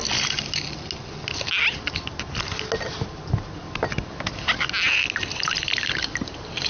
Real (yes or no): yes